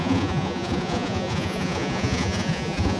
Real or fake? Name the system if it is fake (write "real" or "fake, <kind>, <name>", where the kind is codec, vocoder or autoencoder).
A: fake, vocoder, Vocos